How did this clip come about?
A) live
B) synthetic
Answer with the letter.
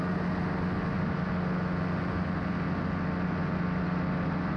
A